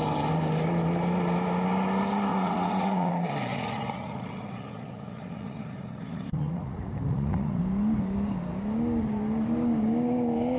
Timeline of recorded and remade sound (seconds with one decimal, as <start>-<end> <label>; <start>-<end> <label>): 0.0-2.3 recorded; 2.3-3.1 remade; 3.1-3.5 recorded; 3.5-7.6 remade; 7.6-10.6 recorded

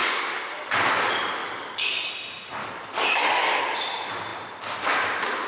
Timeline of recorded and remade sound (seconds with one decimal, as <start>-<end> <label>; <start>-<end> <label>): 0.0-0.9 remade; 0.9-1.4 recorded; 1.4-2.1 remade; 2.1-2.6 recorded; 2.6-3.6 remade; 3.6-5.5 recorded

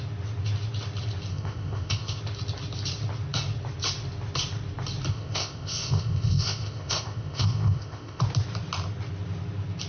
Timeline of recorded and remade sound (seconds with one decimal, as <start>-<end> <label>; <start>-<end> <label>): 0.0-1.3 recorded; 1.3-2.2 remade; 2.2-5.1 recorded; 5.1-8.2 remade; 8.2-9.9 recorded

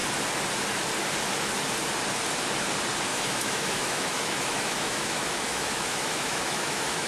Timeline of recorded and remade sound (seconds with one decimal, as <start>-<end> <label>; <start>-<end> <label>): 0.0-3.1 recorded; 3.1-7.1 remade

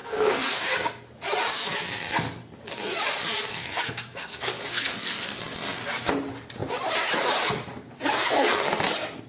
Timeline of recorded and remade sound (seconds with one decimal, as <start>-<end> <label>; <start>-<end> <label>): 0.0-0.6 remade; 0.6-3.5 recorded; 3.5-5.4 remade; 5.4-9.3 recorded